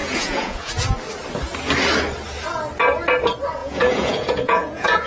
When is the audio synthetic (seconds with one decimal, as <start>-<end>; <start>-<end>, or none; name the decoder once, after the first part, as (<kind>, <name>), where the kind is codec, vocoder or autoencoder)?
0.0-0.7 (vocoder, Vocos); 3.6-5.1